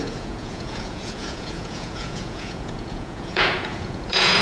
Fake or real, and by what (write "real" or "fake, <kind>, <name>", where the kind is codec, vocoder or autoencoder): fake, vocoder, Vocos